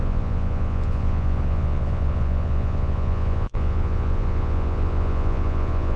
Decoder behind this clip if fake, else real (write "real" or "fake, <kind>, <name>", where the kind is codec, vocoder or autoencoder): fake, vocoder, Vocos